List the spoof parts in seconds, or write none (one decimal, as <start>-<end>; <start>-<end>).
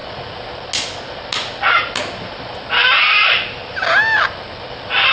none